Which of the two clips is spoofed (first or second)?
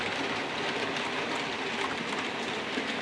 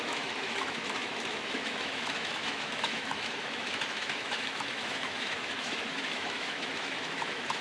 second